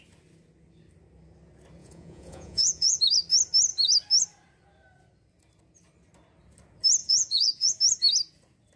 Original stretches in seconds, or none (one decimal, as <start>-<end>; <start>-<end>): 0.0-1.8; 3.0-7.0; 7.7-8.8